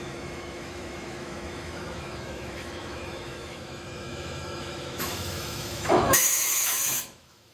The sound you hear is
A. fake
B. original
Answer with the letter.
A